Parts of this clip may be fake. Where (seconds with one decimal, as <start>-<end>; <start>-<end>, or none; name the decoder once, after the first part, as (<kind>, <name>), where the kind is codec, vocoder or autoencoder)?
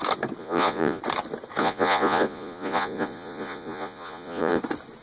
0.4-1.0 (vocoder, Vocos); 1.6-4.6